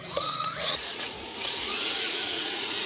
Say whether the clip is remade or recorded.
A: remade